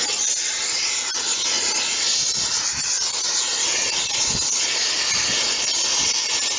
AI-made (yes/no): no